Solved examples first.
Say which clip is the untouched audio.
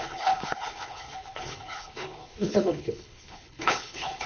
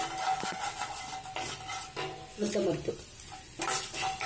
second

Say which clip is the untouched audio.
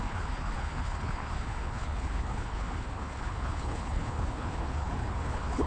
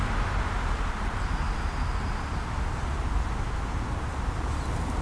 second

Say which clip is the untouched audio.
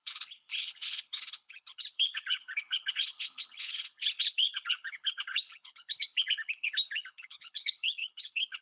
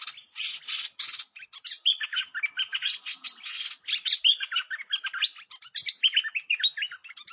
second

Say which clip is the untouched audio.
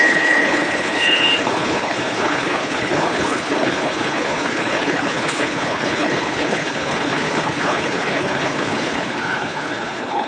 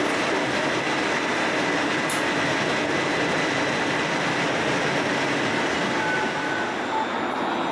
second